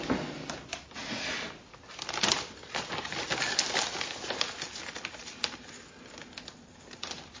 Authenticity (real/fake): real